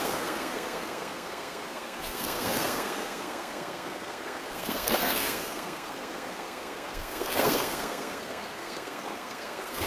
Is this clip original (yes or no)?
no